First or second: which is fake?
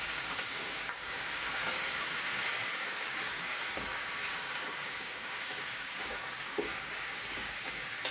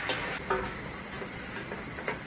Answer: first